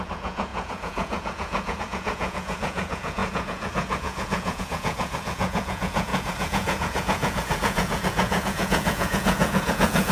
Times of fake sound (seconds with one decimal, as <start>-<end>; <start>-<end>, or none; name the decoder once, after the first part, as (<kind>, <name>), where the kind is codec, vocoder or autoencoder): 0.0-10.1 (vocoder, Vocos)